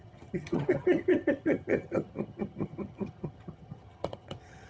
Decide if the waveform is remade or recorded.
remade